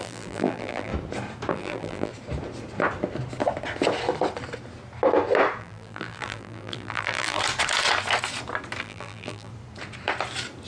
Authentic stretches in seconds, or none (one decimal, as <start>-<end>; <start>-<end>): 0.9-1.5; 2.1-5.6; 7.4-8.8; 9.5-10.7